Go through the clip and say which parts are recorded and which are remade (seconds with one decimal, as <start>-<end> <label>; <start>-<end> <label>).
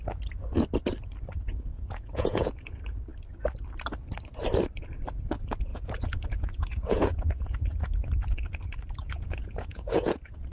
0.0-1.5 recorded; 1.5-2.6 remade; 2.6-5.7 recorded; 5.7-8.1 remade; 8.1-9.0 recorded; 9.0-10.5 remade